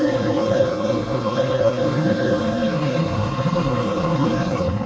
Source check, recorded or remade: remade